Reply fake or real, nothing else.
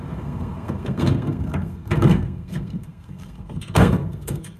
fake